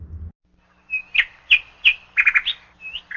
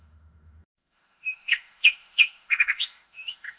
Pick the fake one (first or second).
second